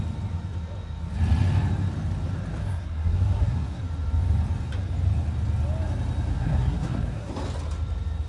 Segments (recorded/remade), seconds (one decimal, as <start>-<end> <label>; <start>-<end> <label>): 0.0-2.6 recorded; 2.6-3.8 remade; 3.8-6.3 recorded; 6.3-7.3 remade; 7.3-8.3 recorded